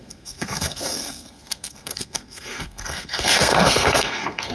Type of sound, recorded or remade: remade